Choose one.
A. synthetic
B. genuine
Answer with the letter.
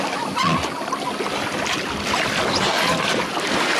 B